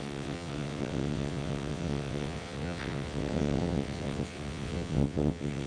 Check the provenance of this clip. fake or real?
fake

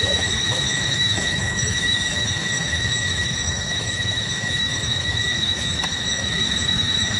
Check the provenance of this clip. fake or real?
fake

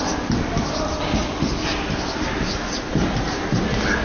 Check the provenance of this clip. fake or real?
real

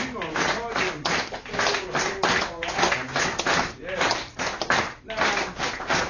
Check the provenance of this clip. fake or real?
real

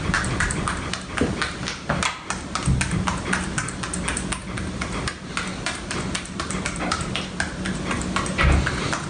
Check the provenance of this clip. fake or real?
real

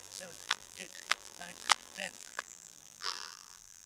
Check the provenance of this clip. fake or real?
fake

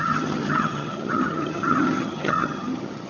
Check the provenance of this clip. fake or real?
fake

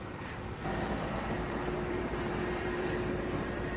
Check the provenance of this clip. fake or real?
fake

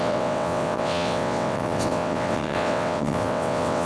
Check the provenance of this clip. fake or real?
fake